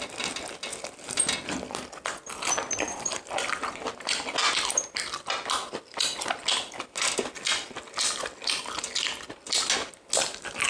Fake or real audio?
real